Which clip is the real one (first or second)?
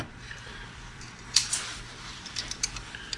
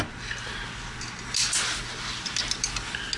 second